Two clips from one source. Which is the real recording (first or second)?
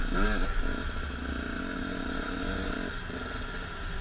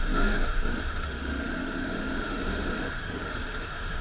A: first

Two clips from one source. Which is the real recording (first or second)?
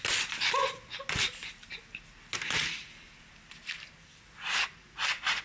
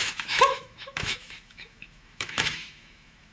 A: first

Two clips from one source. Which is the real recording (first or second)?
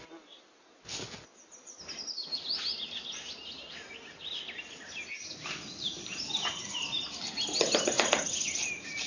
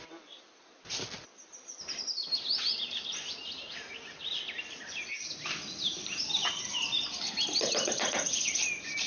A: first